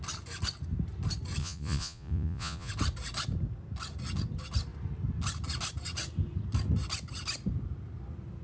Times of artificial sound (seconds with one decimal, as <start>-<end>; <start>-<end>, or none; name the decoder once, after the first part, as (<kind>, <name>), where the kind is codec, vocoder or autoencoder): 1.4-2.7 (vocoder, Vocos)